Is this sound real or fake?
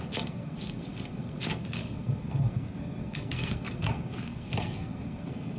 fake